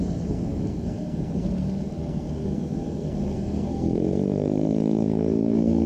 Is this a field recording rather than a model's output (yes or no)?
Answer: no